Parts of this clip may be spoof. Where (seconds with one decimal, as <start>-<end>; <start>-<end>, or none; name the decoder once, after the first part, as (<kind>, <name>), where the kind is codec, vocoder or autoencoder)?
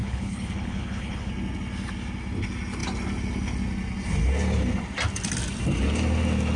0.0-1.3 (codec, HILCodec)